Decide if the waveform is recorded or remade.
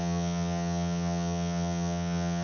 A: remade